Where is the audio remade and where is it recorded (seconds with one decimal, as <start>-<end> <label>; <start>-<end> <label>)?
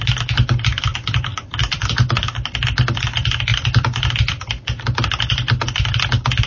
0.0-6.5 recorded